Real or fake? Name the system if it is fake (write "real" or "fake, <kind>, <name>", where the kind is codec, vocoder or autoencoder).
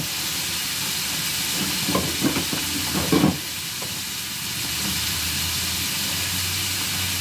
real